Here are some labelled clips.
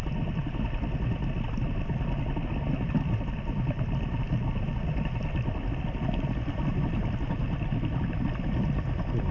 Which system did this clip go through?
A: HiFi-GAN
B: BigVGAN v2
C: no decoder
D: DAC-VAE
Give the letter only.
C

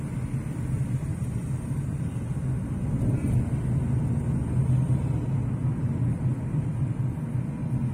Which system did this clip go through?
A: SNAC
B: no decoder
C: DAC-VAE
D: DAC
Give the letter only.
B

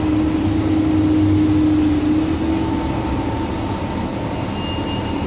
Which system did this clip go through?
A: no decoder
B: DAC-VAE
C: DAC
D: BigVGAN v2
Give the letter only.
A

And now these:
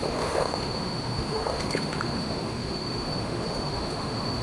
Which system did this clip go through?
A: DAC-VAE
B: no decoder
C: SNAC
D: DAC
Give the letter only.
A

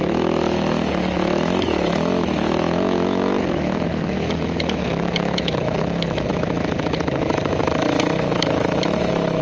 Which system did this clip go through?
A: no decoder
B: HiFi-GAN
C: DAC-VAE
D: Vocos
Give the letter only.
C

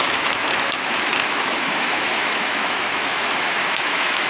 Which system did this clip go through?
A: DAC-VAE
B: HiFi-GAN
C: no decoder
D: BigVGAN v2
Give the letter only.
A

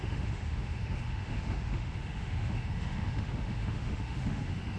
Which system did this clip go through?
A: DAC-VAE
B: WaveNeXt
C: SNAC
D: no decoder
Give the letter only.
A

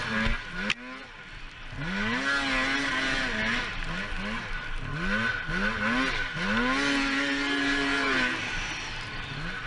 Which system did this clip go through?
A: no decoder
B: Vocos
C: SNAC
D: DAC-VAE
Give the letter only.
A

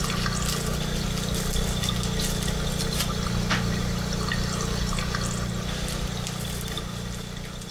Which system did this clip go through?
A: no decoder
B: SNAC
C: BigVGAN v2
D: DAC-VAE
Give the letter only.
A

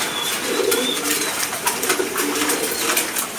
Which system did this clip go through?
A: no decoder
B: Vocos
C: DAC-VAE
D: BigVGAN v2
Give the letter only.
A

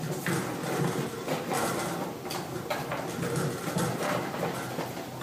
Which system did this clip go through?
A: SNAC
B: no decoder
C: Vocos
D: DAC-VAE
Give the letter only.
B